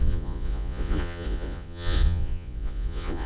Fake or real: fake